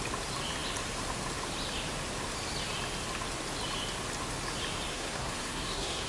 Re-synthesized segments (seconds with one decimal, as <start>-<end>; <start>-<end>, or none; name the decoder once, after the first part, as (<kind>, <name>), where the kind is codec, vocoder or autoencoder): 4.9-6.1 (codec, SNAC)